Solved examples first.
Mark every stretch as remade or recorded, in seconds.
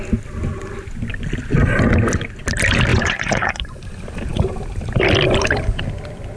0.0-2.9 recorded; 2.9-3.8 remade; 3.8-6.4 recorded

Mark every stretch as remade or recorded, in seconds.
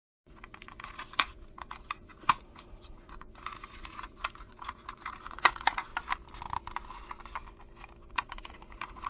0.0-5.9 remade; 5.9-8.1 recorded; 8.1-9.1 remade